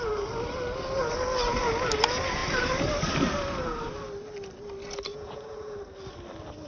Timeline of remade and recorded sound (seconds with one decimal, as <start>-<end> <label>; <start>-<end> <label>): 0.0-5.1 recorded; 5.1-5.8 remade; 5.8-6.7 recorded